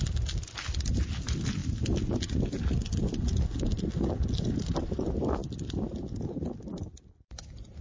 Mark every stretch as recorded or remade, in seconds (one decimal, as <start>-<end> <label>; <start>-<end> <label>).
0.0-5.4 recorded; 5.4-5.9 remade; 5.9-7.8 recorded